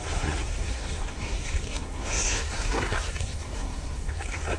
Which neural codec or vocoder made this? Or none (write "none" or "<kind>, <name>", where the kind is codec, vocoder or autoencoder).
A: codec, SNAC